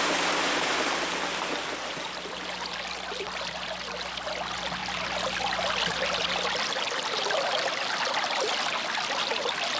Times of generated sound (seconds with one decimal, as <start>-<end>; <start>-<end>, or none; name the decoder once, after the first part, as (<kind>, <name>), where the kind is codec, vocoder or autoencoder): none